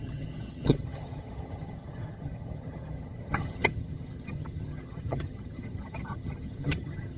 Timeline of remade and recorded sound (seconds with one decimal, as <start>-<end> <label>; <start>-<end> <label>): 0.0-7.2 remade